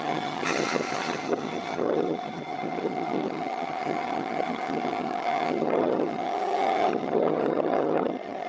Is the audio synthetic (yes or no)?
yes